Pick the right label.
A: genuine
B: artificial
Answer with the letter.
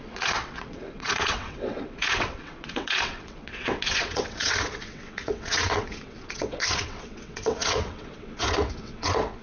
B